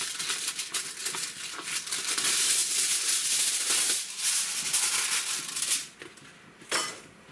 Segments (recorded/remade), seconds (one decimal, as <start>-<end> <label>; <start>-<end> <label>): 0.0-7.3 recorded